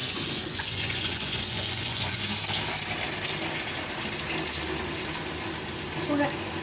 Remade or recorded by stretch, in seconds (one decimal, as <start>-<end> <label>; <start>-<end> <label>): 0.0-2.2 remade; 2.2-6.6 recorded